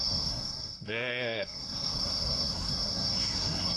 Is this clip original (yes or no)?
no